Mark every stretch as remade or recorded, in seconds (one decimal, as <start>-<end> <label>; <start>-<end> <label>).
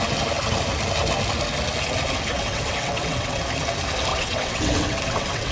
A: 0.0-2.3 recorded; 2.3-3.4 remade; 3.4-4.1 recorded; 4.1-5.5 remade